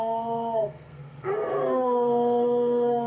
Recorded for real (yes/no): no